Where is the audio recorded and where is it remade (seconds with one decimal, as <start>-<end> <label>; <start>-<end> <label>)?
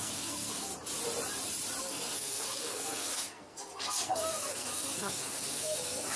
0.0-0.7 remade; 0.7-1.8 recorded; 1.8-6.2 remade